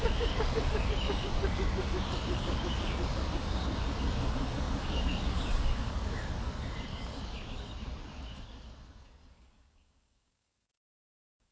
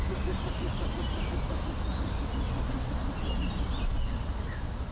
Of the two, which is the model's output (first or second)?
first